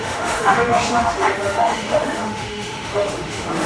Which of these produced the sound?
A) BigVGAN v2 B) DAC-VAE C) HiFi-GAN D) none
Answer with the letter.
B